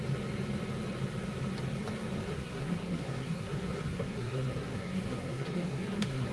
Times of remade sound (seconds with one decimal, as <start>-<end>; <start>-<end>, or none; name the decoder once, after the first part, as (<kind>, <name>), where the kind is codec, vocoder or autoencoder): 2.2-6.3 (codec, SNAC)